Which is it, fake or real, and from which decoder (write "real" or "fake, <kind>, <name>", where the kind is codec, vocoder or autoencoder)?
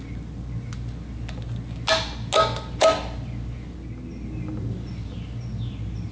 real